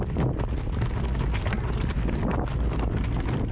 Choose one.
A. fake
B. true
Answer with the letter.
B